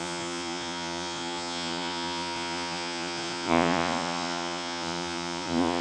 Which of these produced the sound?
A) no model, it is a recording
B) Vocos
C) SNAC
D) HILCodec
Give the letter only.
B